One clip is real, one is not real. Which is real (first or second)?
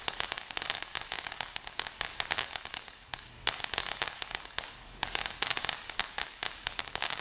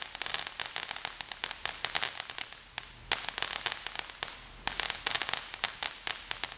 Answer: second